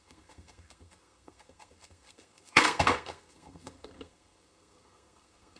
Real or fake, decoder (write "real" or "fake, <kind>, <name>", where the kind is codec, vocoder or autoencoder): fake, codec, SNAC